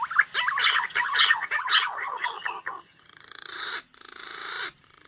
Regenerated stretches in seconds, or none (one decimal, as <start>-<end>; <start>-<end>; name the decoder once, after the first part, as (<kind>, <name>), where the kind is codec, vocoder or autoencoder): 0.6-3.7 (vocoder, HiFi-GAN)